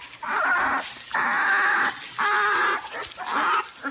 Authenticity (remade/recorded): recorded